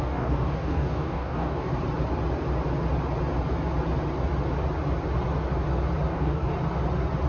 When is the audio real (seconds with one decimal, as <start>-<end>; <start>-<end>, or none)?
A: 1.7-6.1; 6.5-7.3

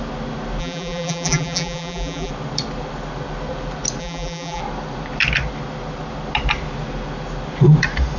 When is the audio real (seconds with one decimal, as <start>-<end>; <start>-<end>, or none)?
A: 0.0-0.6; 2.3-4.0; 4.6-8.2